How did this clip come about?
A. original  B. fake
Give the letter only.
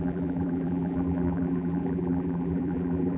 B